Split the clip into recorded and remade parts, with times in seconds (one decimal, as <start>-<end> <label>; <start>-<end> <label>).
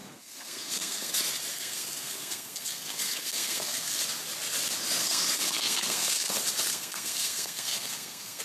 0.0-1.1 remade; 1.1-1.5 recorded; 1.5-4.0 remade; 4.0-5.0 recorded; 5.0-6.3 remade; 6.3-6.7 recorded; 6.7-8.4 remade